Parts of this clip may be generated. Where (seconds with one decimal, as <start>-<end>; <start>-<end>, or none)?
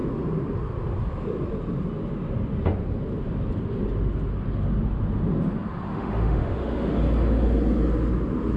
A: 5.9-6.9